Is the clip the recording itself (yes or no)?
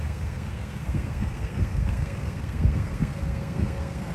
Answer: no